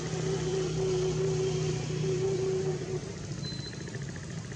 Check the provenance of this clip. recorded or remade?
recorded